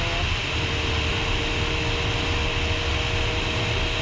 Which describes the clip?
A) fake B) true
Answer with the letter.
B